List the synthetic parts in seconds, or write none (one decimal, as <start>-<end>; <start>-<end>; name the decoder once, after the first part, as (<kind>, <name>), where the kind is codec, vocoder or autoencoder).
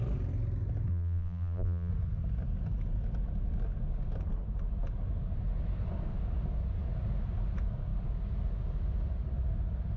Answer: 0.9-1.9 (vocoder, BigVGAN v2)